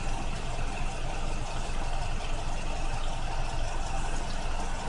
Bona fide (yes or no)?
yes